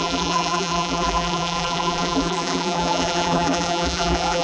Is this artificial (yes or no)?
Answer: yes